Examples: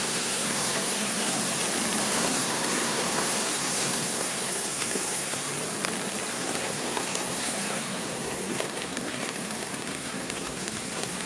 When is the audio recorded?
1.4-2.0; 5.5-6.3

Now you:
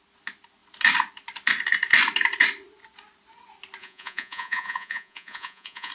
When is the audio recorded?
0.0-3.8

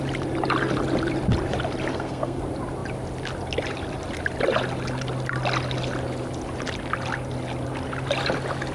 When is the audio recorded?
0.0-1.9; 2.4-8.7

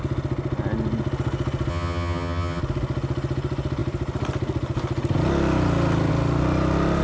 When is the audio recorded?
0.0-1.7; 2.6-7.0